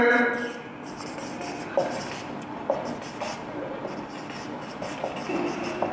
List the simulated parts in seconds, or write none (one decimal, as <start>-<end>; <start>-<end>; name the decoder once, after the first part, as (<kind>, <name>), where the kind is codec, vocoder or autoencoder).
1.8-5.3 (vocoder, BigVGAN v2)